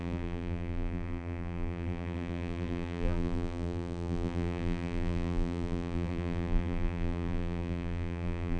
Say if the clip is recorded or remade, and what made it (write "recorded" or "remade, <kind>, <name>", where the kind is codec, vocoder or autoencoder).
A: remade, vocoder, BigVGAN v2